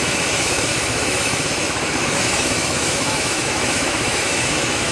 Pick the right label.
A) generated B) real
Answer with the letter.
A